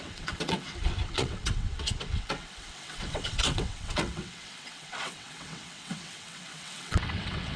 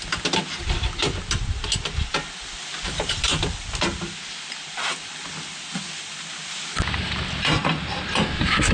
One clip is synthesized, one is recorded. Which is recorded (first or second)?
second